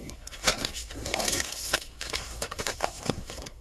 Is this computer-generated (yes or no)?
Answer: yes